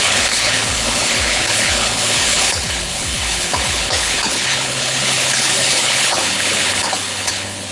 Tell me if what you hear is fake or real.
fake